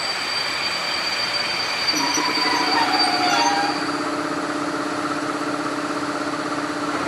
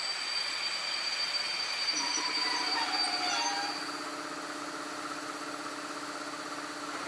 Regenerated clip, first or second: first